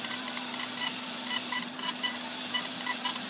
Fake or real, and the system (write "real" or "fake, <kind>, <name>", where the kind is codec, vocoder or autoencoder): fake, vocoder, BigVGAN v2